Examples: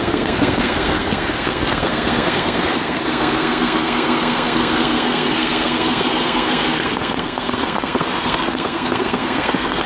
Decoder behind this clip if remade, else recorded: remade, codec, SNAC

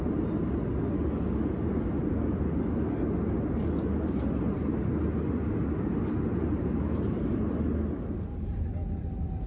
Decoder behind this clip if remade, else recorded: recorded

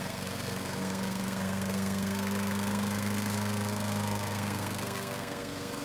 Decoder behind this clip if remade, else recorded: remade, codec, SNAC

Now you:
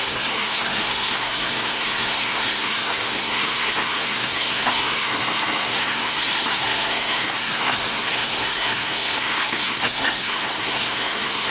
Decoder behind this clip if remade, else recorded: remade, codec, SNAC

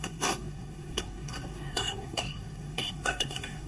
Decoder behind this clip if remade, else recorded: remade, codec, SNAC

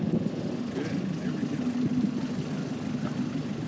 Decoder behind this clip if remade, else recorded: recorded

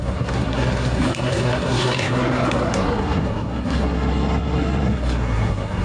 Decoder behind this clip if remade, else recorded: remade, codec, SNAC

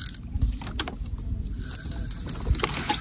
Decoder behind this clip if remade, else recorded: recorded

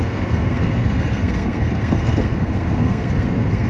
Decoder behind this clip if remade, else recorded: remade, codec, SNAC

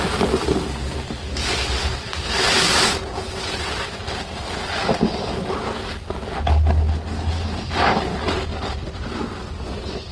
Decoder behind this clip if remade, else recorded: recorded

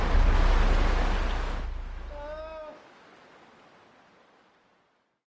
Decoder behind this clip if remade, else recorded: recorded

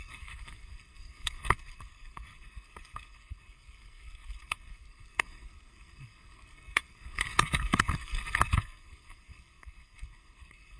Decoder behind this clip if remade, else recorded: remade, codec, SNAC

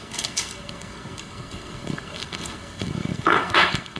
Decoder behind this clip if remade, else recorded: remade, codec, SNAC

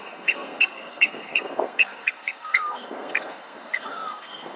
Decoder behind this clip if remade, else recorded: remade, codec, SNAC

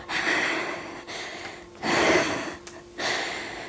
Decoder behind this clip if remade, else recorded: recorded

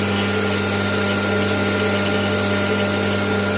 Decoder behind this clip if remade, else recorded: recorded